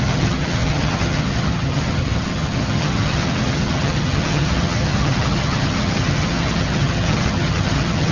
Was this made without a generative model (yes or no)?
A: no